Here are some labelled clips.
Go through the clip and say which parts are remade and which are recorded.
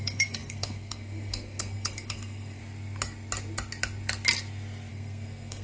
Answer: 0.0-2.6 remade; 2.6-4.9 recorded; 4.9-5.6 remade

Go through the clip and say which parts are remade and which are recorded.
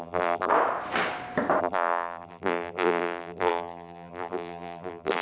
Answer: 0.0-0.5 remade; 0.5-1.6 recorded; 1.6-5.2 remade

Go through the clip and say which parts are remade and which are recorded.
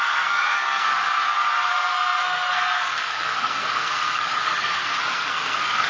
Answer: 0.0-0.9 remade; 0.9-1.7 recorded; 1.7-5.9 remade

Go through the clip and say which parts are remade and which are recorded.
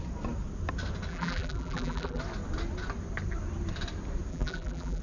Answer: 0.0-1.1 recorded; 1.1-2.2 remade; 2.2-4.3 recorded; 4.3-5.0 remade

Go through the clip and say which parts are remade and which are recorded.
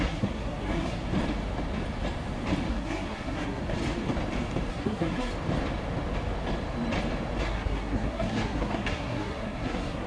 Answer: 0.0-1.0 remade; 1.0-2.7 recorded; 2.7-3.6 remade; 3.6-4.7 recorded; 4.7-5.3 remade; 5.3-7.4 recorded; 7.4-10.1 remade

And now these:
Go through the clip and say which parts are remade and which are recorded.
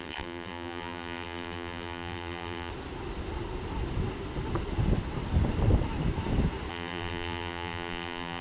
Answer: 0.0-2.7 remade; 2.7-6.7 recorded; 6.7-8.4 remade